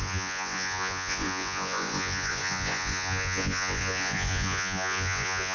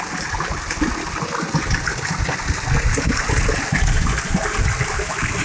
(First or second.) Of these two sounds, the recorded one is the second